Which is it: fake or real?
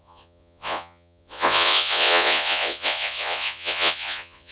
fake